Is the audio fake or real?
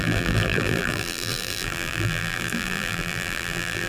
fake